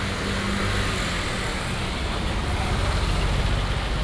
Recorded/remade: recorded